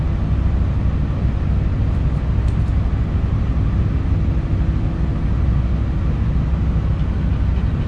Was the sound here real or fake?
real